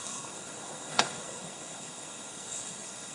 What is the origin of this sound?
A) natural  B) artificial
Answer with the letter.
B